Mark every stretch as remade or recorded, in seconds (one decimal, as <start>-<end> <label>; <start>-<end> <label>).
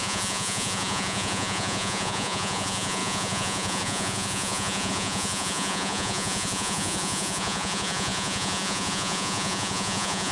0.0-10.3 remade